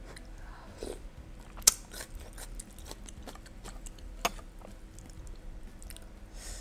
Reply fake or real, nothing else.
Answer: real